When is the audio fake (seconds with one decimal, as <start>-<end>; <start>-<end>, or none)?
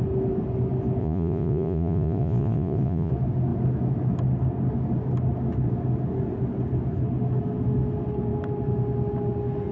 1.0-3.1